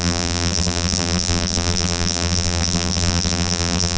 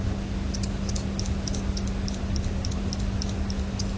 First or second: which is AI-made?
first